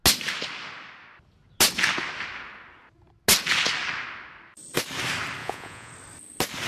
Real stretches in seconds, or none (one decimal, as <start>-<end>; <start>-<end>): 0.0-5.4; 5.9-6.7